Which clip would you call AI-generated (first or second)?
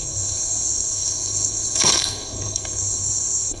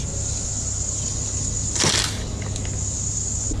first